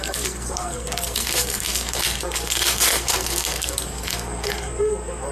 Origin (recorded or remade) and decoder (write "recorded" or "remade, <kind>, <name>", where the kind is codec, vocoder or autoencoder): remade, codec, SNAC